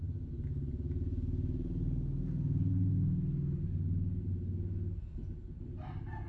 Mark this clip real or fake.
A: real